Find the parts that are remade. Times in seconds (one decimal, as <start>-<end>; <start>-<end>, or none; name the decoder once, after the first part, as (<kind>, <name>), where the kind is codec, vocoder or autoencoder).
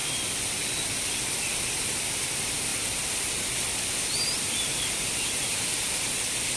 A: none